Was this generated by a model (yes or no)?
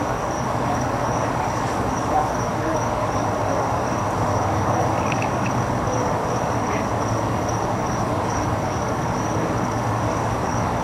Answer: yes